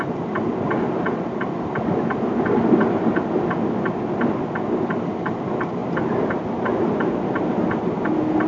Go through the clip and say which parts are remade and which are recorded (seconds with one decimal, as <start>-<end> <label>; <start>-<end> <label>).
0.0-8.5 recorded